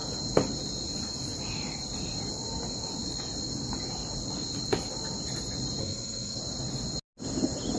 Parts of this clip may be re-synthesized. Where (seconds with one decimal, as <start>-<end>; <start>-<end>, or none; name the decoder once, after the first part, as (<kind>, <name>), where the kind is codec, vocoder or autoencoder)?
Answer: 5.8-6.4 (codec, SNAC)